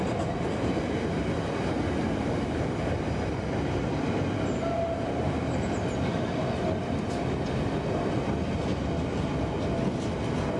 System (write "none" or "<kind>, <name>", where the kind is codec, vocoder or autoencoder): none